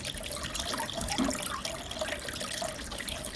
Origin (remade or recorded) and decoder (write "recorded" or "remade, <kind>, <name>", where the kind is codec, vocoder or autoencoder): recorded